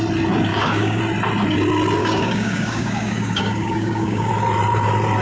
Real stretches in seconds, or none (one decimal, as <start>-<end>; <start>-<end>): 0.0-0.5; 1.0-2.0; 4.3-5.2